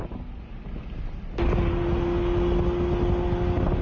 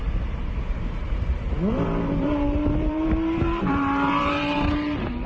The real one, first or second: first